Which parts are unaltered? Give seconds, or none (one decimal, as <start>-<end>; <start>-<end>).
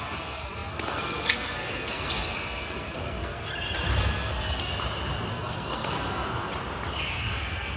3.5-4.0; 4.7-5.3; 6.5-7.0